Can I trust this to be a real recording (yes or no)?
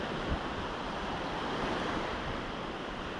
no